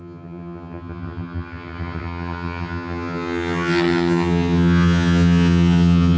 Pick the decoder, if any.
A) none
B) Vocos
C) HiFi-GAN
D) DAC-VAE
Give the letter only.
C